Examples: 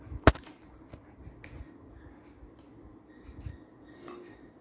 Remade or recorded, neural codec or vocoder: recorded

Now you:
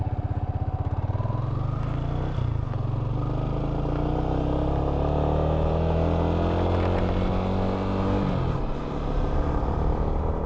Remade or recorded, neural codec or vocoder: recorded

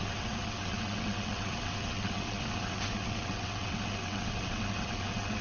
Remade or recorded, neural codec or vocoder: remade, vocoder, WaveNeXt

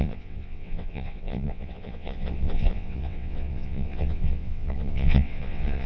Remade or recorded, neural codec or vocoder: remade, vocoder, WaveNeXt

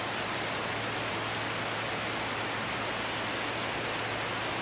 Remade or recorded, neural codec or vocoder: recorded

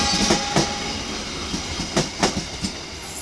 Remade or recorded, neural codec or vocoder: recorded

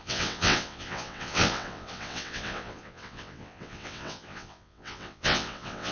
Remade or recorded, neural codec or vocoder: remade, vocoder, WaveNeXt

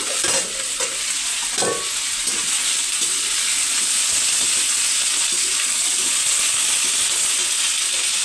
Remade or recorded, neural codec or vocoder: recorded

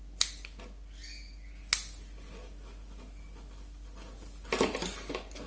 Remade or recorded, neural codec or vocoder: recorded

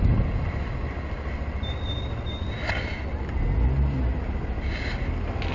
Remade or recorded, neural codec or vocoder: recorded